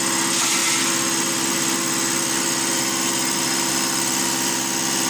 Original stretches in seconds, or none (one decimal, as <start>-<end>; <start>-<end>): 0.0-5.1